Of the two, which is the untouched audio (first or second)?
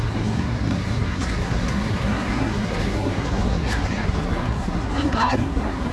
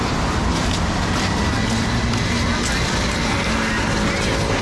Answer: second